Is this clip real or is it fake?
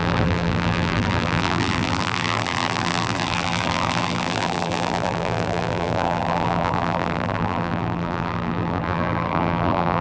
fake